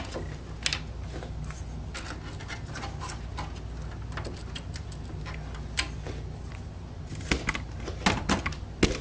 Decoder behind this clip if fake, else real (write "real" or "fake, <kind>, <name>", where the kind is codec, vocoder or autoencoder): real